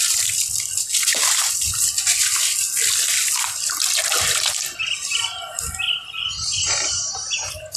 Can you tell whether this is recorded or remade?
recorded